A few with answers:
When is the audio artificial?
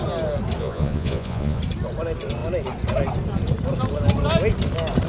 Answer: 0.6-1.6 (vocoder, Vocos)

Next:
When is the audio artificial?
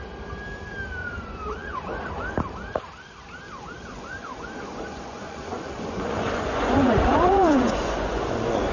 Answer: 1.0-2.1 (vocoder, Vocos); 3.9-8.7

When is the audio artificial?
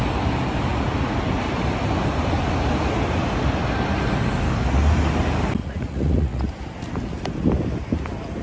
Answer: 5.6-6.5 (vocoder, Vocos)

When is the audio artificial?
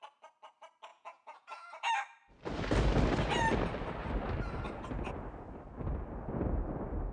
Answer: 0.9-1.9 (vocoder, Vocos)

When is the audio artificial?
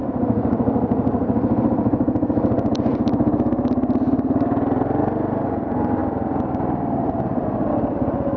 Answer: none